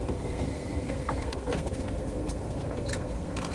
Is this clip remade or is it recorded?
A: remade